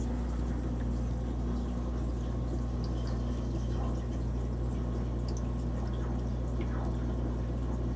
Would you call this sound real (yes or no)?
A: yes